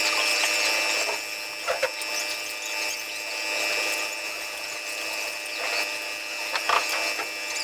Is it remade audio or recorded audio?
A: recorded